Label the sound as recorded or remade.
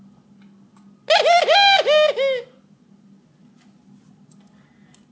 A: recorded